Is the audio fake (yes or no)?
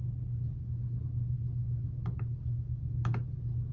no